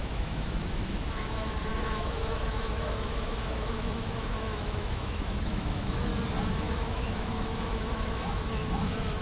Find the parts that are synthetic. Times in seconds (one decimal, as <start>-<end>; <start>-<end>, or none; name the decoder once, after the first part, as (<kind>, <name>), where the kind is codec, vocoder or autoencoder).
0.0-6.1 (autoencoder, DAC-VAE); 6.6-9.2